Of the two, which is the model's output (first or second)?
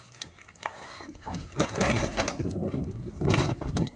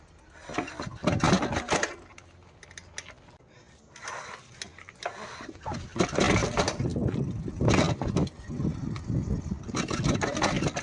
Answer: first